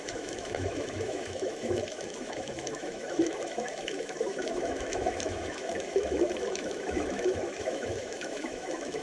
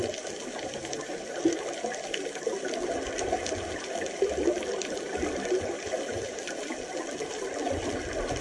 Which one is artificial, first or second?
first